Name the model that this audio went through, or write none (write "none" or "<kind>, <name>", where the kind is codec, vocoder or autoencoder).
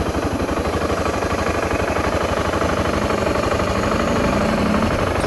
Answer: none